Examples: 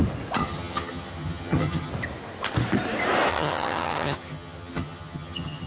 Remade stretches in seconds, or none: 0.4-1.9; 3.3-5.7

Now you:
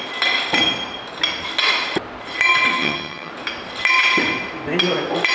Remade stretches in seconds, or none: 2.7-3.3